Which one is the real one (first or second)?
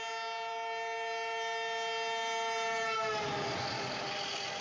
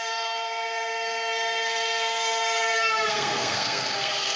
first